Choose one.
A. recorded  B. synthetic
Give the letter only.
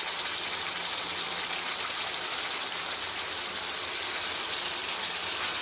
A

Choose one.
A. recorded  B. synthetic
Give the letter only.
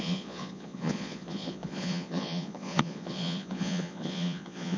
B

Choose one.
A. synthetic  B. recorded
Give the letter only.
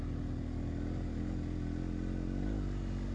B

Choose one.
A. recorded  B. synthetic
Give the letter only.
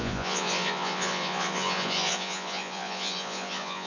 B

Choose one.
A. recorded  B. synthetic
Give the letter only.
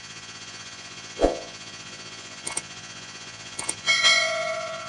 B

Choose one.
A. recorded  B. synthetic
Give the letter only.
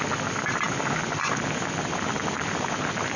A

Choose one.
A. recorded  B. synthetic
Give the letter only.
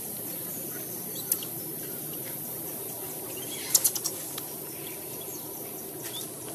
A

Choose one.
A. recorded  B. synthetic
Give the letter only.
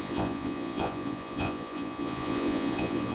B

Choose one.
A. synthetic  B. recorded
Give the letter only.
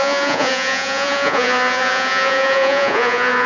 A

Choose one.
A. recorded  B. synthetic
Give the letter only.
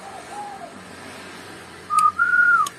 B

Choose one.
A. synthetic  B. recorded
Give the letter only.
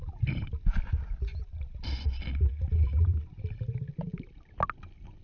B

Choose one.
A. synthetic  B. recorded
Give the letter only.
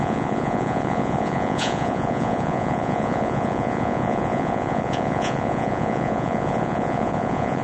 A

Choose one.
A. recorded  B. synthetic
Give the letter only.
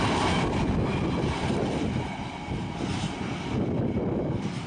A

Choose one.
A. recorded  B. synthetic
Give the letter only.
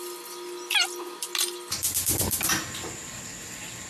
A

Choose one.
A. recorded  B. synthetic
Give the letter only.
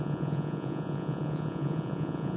B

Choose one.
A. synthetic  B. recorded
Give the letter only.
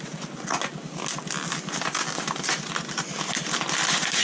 B